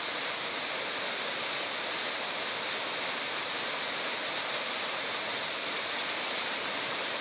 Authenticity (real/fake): real